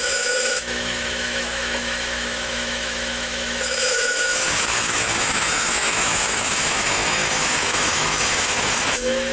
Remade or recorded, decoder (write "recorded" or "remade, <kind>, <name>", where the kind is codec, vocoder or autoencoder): remade, autoencoder, DAC-VAE